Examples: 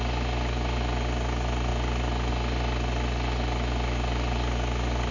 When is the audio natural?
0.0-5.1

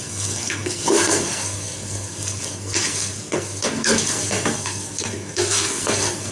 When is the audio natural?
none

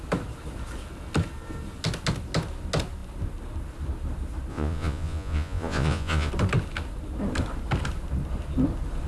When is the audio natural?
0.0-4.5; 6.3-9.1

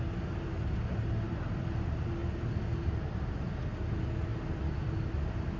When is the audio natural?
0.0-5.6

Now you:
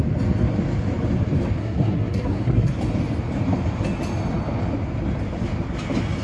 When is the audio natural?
0.0-1.6; 2.7-6.2

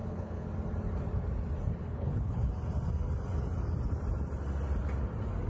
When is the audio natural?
0.5-1.8; 2.5-5.5

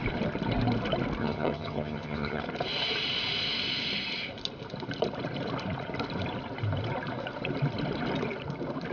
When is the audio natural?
0.0-1.2; 2.4-8.9

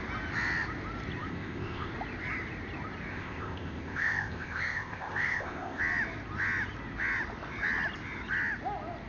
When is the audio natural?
0.0-1.3; 1.9-3.1; 5.8-9.1